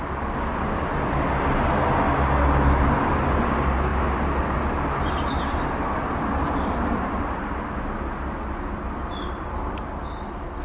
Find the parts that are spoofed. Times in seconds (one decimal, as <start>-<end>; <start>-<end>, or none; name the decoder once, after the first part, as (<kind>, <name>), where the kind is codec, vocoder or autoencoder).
3.9-7.4 (vocoder, BigVGAN v2)